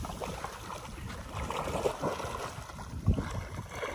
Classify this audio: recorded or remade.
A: recorded